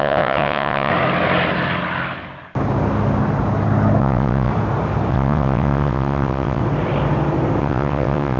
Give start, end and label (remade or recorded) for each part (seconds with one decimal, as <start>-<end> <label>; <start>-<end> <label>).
0.0-0.9 remade; 0.9-4.0 recorded; 4.0-4.5 remade; 4.5-5.1 recorded; 5.1-6.6 remade; 6.6-7.6 recorded; 7.6-8.4 remade